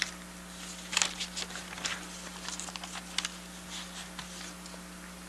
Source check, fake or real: real